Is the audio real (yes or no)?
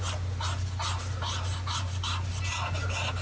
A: yes